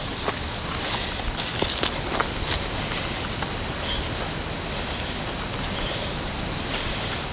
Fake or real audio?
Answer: real